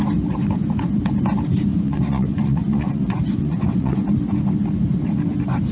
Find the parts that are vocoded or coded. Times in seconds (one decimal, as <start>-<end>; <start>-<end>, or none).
1.7-4.1